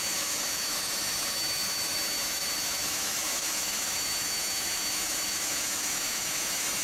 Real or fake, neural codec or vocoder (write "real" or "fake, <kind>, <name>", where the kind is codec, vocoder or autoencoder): fake, autoencoder, DAC-VAE